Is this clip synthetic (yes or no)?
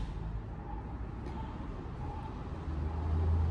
no